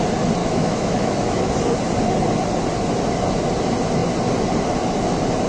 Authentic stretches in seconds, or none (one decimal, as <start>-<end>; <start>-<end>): 0.0-0.4; 1.5-5.5